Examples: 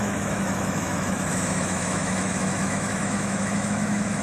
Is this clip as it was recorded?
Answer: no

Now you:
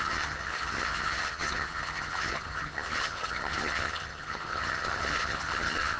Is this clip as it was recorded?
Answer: no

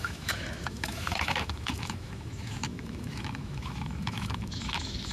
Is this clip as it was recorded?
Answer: no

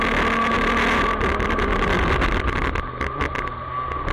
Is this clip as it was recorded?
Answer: yes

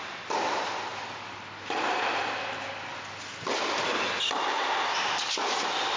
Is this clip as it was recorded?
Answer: yes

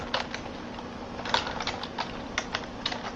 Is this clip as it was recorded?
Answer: yes